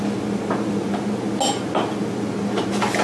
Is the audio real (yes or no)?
yes